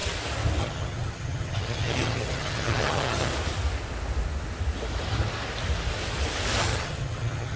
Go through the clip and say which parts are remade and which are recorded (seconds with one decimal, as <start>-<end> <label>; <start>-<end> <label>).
0.0-0.6 recorded; 0.6-3.3 remade; 3.3-6.6 recorded; 6.6-7.6 remade